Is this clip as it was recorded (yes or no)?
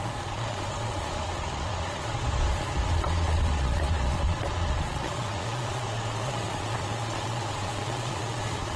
no